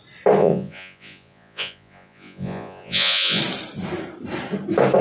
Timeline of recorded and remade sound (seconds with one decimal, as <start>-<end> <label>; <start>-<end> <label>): 0.0-0.4 recorded; 0.4-3.4 remade; 3.4-5.0 recorded